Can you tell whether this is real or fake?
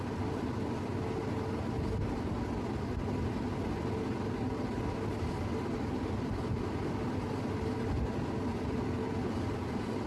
real